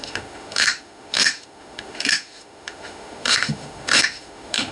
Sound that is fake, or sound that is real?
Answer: fake